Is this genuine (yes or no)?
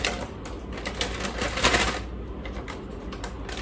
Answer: yes